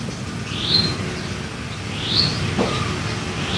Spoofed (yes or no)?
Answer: no